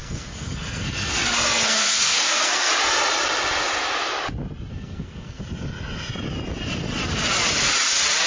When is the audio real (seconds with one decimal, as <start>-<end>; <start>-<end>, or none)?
2.7-4.7; 5.4-8.3

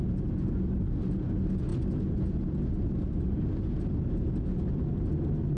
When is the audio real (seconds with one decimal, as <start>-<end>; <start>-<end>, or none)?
0.0-5.6

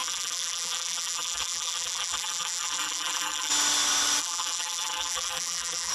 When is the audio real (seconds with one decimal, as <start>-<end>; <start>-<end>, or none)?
3.5-4.2

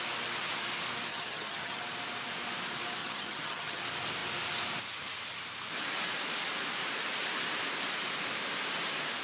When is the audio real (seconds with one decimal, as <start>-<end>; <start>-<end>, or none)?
0.0-1.1; 1.8-3.0; 3.8-9.2

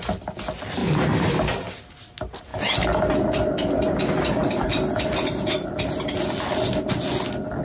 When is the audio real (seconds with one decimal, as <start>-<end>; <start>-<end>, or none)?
0.0-7.6

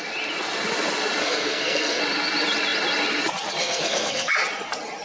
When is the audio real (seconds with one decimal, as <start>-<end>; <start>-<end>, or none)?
0.0-1.2; 2.0-3.6; 4.3-5.0

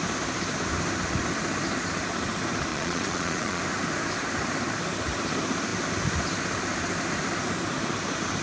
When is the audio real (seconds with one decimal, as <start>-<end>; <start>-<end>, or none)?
0.0-2.7; 3.6-8.4